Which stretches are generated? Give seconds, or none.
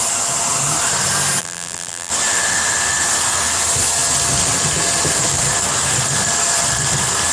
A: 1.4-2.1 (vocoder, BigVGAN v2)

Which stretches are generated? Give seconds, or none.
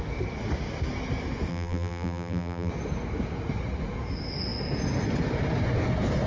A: 1.5-2.7 (vocoder, BigVGAN v2)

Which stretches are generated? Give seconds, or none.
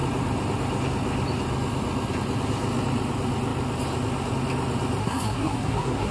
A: 5.0-6.1 (codec, SNAC)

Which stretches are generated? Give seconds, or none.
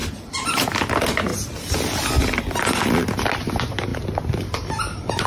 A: 0.0-0.7 (vocoder, BigVGAN v2); 1.3-3.5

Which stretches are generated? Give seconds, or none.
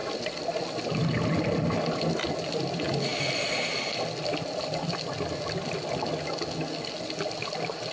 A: none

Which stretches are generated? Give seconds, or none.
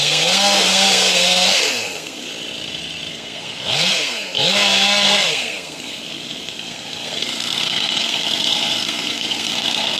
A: 0.0-2.3 (codec, SNAC); 3.1-10.0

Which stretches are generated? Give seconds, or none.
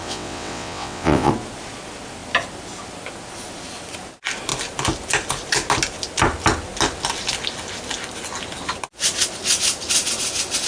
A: 0.0-1.3 (vocoder, WaveNeXt)